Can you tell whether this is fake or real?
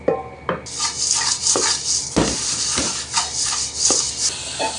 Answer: real